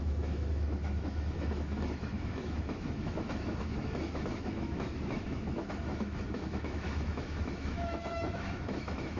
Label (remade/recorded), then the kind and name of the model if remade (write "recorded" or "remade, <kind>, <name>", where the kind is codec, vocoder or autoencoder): remade, autoencoder, DAC-VAE